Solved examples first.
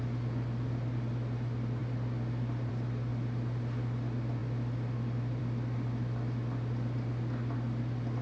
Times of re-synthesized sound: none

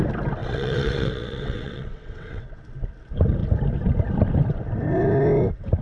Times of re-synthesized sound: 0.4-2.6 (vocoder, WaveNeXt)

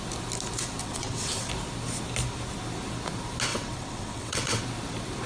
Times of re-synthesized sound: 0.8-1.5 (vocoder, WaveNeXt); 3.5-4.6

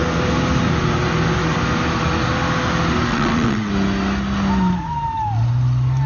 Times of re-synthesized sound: 3.1-3.7 (vocoder, WaveNeXt)

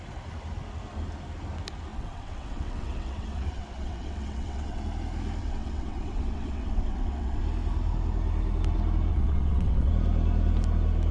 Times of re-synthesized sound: 1.9-4.8 (vocoder, WaveNeXt); 5.4-7.4; 9.1-9.9